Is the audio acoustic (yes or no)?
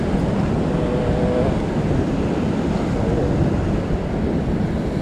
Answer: yes